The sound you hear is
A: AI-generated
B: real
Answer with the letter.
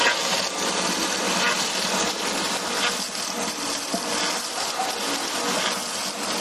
B